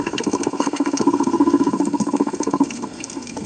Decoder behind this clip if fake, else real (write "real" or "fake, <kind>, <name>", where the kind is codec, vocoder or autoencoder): fake, codec, SNAC